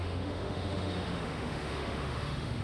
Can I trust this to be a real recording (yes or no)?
no